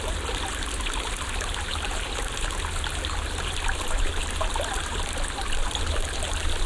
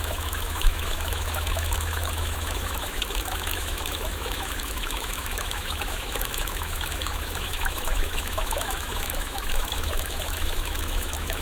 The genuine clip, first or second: first